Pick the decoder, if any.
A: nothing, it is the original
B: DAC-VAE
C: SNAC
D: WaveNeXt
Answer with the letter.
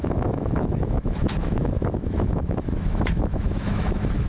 B